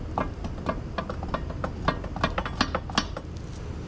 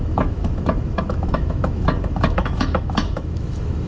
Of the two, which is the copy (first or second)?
second